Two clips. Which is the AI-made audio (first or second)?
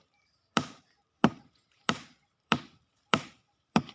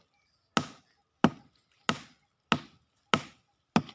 first